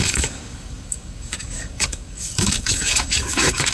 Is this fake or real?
fake